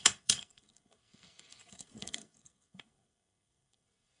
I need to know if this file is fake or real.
fake